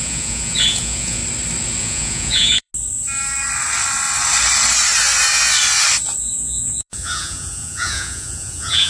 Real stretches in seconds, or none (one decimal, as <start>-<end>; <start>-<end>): 1.2-1.8; 2.7-6.2